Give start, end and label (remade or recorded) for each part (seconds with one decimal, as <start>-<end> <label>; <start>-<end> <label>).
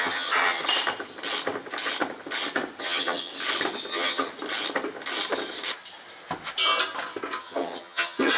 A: 0.0-0.6 remade; 0.6-2.8 recorded; 2.8-3.3 remade; 3.3-3.9 recorded; 3.9-4.3 remade; 4.3-7.4 recorded; 7.4-8.4 remade